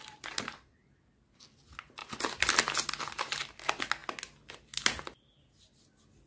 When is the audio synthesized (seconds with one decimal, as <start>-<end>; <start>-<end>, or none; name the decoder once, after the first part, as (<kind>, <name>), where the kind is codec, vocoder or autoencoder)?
none